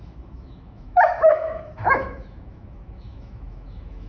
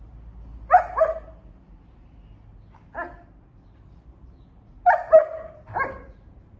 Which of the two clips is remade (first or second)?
first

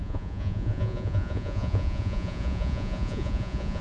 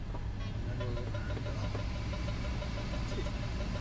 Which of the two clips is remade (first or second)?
first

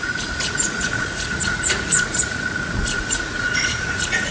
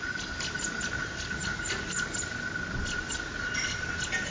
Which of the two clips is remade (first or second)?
first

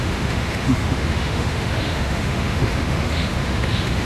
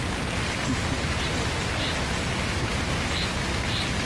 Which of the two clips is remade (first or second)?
first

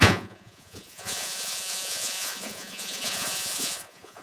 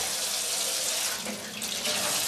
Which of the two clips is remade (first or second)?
first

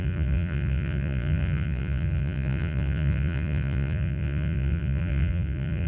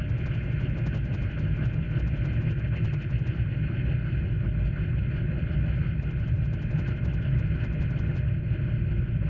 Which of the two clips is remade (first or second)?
first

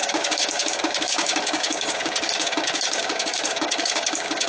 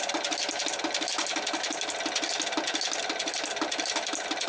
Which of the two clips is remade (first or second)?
first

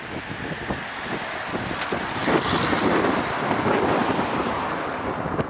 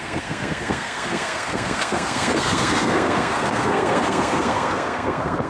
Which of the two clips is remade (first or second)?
second